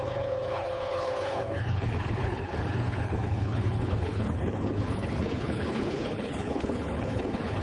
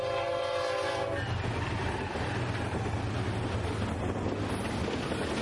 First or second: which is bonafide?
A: second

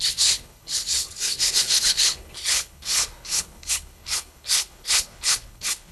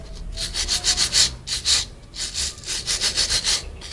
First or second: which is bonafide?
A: second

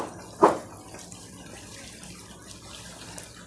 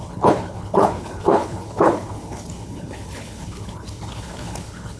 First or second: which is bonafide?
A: first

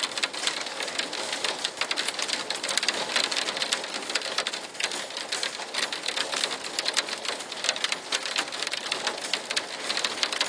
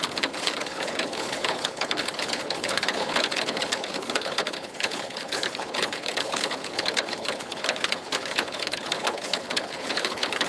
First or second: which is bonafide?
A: first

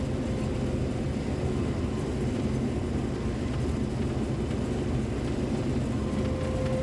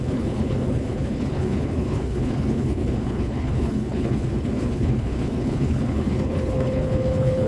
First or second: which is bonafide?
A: first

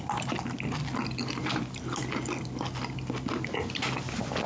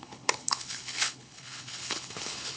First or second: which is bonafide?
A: first